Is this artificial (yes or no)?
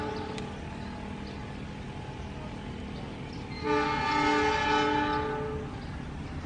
no